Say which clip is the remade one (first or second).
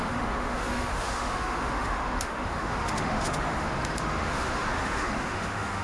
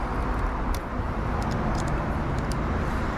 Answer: first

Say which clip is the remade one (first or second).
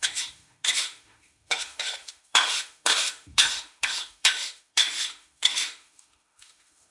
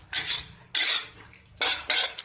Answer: first